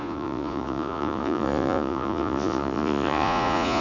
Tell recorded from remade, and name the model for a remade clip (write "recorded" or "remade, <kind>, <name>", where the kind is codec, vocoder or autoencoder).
remade, vocoder, Vocos